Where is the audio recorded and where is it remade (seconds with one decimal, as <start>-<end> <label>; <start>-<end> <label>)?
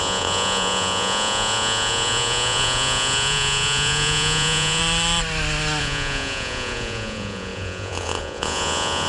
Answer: 0.0-4.8 remade; 4.8-5.8 recorded; 5.8-9.1 remade